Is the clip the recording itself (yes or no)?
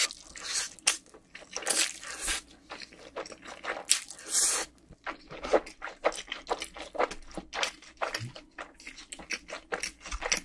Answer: yes